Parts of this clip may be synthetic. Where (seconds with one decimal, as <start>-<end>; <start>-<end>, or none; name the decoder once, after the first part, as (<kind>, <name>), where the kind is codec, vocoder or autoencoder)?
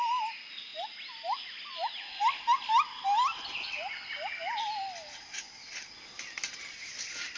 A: none